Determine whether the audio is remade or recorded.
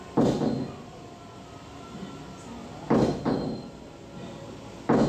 recorded